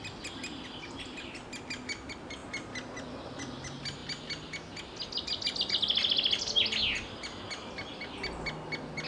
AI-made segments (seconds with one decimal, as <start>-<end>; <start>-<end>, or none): none

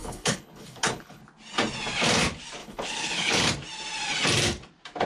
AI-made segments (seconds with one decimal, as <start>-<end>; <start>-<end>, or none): 0.0-1.2; 2.6-3.5

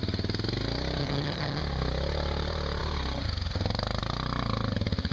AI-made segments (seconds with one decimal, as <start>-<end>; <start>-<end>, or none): 1.0-1.6

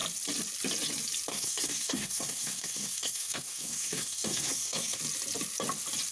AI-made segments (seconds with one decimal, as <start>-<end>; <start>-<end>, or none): 1.3-5.0

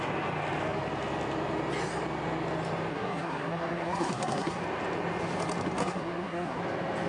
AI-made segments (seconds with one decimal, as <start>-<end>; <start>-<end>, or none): 2.9-4.6; 5.8-6.6

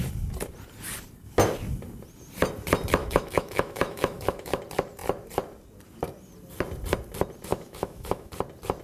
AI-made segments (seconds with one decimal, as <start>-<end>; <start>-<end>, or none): 3.0-4.6; 7.5-8.3

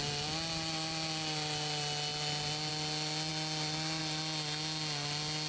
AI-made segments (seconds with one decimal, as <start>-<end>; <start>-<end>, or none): none

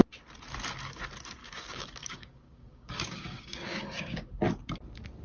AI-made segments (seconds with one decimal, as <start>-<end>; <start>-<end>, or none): 1.4-4.4